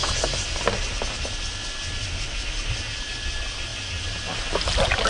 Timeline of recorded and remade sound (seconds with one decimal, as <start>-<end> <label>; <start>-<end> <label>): 0.0-5.1 recorded